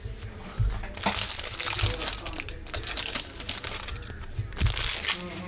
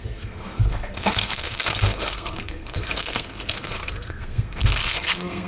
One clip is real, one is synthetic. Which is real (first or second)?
first